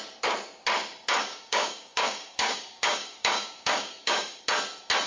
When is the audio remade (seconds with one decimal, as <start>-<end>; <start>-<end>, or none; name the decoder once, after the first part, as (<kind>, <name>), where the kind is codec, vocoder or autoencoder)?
1.3-4.4 (codec, DAC)